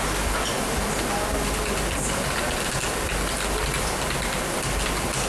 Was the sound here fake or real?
real